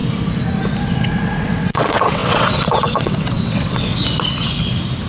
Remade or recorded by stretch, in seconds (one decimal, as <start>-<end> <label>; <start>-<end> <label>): 0.0-0.9 recorded; 0.9-3.9 remade; 3.9-5.1 recorded

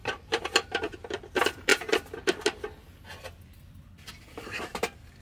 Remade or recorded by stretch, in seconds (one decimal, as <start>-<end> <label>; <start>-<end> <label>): 0.0-1.7 remade; 1.7-4.2 recorded; 4.2-5.2 remade